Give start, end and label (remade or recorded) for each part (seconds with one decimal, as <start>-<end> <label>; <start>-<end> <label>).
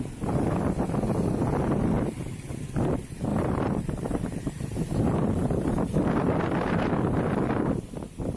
0.0-3.3 recorded; 3.3-6.3 remade; 6.3-8.4 recorded